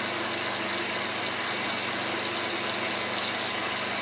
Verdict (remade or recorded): recorded